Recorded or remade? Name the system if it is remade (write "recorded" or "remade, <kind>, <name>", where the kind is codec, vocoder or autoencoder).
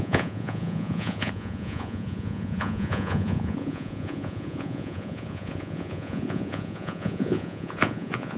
remade, vocoder, Vocos